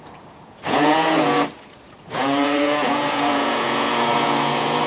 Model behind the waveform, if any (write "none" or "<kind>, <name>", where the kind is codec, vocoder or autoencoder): vocoder, Vocos